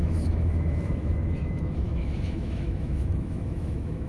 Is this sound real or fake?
fake